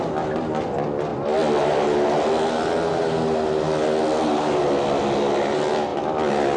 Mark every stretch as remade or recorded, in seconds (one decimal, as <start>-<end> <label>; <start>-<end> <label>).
0.0-6.6 recorded